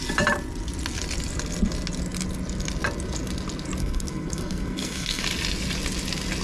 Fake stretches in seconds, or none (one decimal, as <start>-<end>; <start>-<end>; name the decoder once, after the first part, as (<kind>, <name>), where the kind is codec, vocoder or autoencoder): 3.8-5.2 (codec, SNAC)